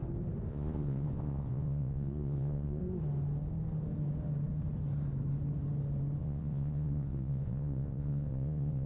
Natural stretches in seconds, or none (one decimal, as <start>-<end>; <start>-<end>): 0.0-0.5; 2.8-6.2